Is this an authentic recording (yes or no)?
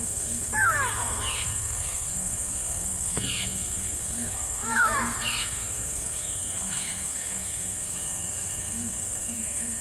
no